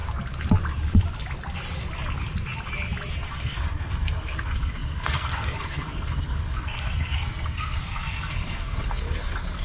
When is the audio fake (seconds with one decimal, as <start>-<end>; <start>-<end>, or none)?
3.1-9.6